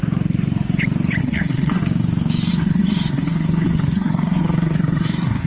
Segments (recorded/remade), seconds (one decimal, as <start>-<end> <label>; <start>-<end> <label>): 0.0-1.2 recorded; 1.2-1.8 remade; 1.8-2.5 recorded; 2.5-5.5 remade